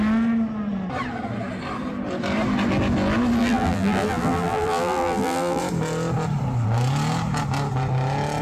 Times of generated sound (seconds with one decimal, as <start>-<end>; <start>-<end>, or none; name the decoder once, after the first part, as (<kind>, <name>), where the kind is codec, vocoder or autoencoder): 3.4-5.6 (vocoder, BigVGAN v2)